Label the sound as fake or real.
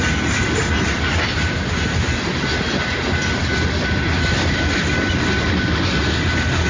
real